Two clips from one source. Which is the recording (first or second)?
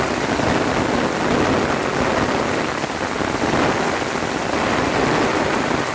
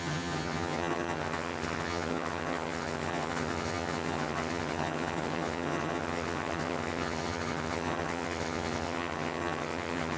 first